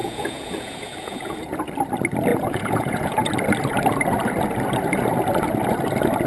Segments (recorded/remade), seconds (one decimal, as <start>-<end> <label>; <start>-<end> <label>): 0.0-1.7 remade; 1.7-2.3 recorded; 2.3-3.3 remade; 3.3-6.3 recorded